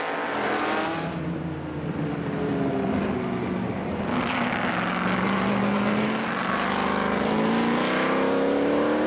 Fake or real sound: real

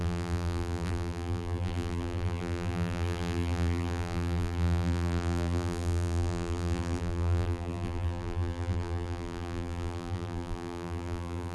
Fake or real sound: fake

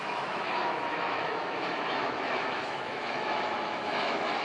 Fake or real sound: fake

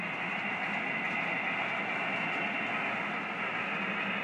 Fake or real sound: real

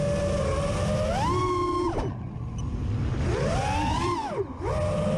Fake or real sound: real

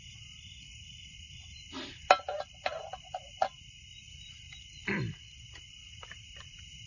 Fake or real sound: fake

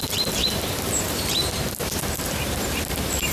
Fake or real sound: fake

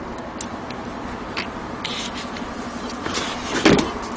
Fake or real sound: real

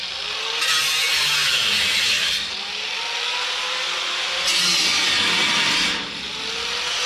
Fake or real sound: real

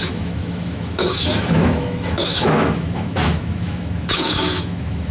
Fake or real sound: fake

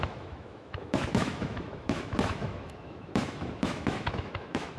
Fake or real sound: fake